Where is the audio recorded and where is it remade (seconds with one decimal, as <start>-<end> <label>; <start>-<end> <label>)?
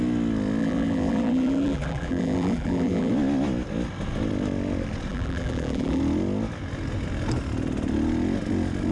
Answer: 0.0-0.6 recorded; 0.6-3.1 remade; 3.1-5.1 recorded; 5.1-6.0 remade; 6.0-8.9 recorded